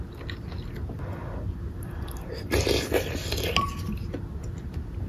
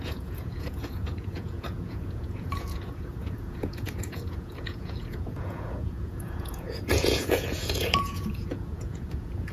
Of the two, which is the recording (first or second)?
first